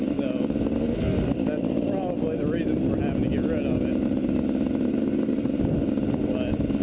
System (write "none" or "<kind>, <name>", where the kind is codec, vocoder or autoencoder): none